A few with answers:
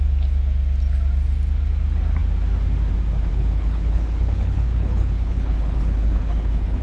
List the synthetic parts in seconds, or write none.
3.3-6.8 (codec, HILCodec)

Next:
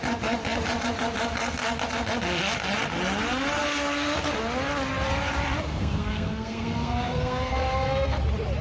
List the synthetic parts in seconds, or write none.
5.7-8.2 (codec, SNAC)

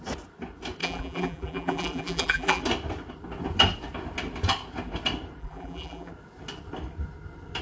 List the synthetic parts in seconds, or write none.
0.8-2.6 (vocoder, BigVGAN v2); 5.4-6.1

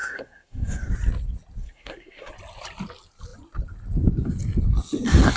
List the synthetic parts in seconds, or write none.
0.0-0.9 (codec, SNAC); 1.6-2.3

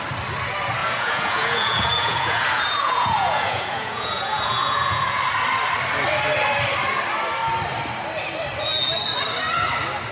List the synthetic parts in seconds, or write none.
0.8-5.2 (vocoder, Vocos)

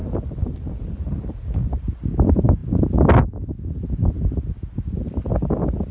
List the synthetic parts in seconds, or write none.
none